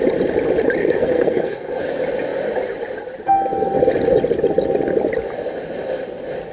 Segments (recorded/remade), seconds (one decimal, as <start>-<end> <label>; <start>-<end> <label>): 0.0-0.8 recorded; 0.8-1.8 remade; 1.8-6.5 recorded